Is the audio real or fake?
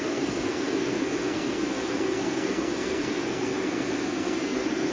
fake